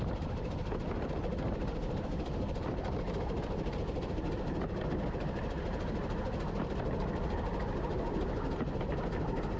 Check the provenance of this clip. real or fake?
real